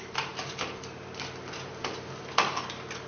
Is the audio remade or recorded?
recorded